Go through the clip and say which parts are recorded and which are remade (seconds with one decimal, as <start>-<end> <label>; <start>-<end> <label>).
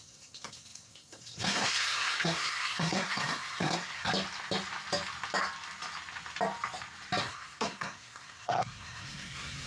0.0-4.1 remade; 4.1-7.2 recorded; 7.2-9.7 remade